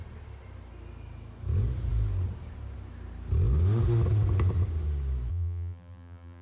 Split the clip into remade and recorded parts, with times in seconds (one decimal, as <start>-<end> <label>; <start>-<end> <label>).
0.0-5.3 recorded; 5.3-6.4 remade